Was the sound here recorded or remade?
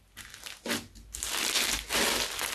recorded